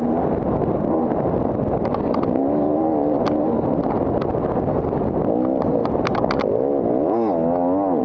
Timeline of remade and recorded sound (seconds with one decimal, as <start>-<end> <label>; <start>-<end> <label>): 0.0-8.0 recorded